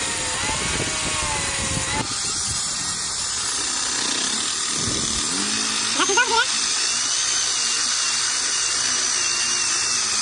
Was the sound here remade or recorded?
recorded